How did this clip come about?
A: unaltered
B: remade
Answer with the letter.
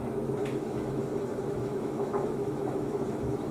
B